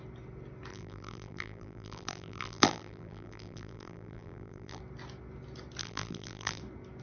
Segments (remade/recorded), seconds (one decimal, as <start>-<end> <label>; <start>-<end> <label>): 0.0-0.7 recorded; 0.7-4.8 remade; 4.8-5.8 recorded; 5.8-6.6 remade; 6.6-7.0 recorded